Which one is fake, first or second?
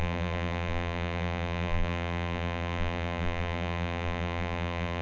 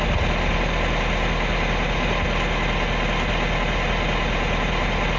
first